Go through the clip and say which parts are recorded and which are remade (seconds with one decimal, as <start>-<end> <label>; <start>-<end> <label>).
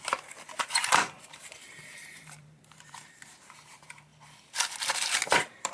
0.0-4.1 remade; 4.1-4.8 recorded; 4.8-5.7 remade